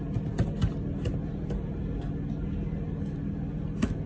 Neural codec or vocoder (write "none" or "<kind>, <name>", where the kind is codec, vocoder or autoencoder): none